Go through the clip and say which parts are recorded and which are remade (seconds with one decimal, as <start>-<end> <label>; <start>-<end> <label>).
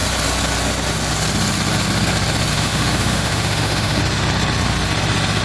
0.0-2.5 recorded; 2.5-4.0 remade; 4.0-5.4 recorded